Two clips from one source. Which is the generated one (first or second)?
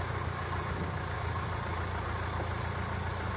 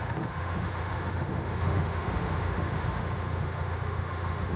second